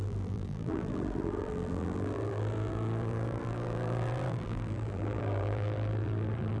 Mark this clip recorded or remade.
remade